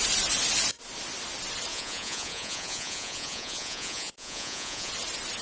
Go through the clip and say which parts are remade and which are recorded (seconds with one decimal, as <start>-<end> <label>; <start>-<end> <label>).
0.0-1.7 recorded; 1.7-4.9 remade; 4.9-5.4 recorded